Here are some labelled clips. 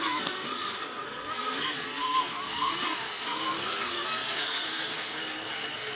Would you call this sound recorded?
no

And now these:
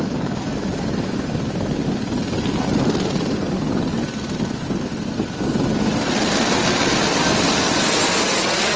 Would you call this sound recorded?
yes